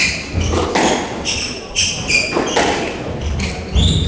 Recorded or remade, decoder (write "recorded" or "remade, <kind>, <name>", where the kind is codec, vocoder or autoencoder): recorded